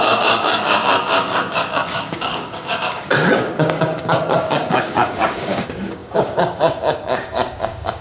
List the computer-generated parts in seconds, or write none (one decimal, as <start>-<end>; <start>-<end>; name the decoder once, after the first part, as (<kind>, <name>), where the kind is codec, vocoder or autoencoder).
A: 0.0-8.0 (codec, DAC)